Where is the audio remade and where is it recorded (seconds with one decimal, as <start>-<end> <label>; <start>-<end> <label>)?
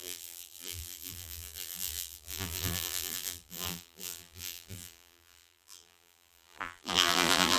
0.0-7.6 remade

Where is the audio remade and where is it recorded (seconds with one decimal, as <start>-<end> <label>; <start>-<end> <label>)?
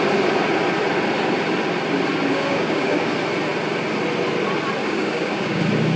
0.0-2.3 recorded; 2.3-3.1 remade; 3.1-4.8 recorded; 4.8-5.6 remade; 5.6-6.0 recorded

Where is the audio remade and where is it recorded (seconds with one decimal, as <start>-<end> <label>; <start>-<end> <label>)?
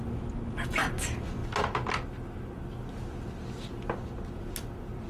0.0-5.1 recorded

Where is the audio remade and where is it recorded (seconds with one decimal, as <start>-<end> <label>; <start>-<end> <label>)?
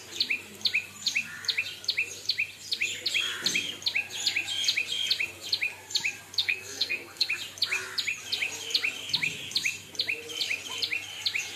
0.0-6.4 recorded; 6.4-7.3 remade; 7.3-11.6 recorded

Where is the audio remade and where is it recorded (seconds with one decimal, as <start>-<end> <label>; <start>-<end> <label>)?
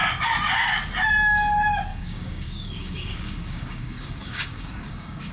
0.0-1.9 recorded; 1.9-5.3 remade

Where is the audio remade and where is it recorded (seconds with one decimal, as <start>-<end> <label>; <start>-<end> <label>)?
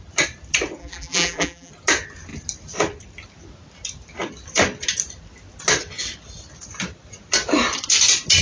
0.0-0.8 recorded; 0.8-1.7 remade; 1.7-8.4 recorded